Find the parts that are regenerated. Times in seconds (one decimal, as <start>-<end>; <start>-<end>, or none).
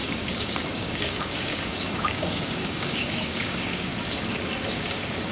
0.0-3.9; 4.7-5.3